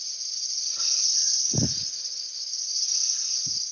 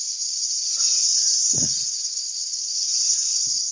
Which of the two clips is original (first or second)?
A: first